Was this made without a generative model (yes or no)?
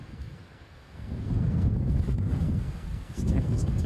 no